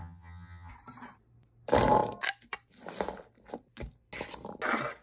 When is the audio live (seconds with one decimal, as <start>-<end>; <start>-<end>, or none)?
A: 0.7-5.0